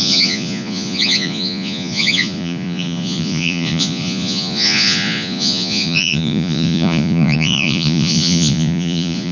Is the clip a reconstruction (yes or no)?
yes